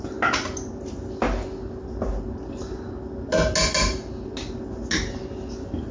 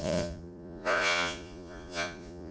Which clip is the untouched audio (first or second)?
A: first